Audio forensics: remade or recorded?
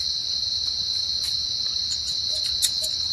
remade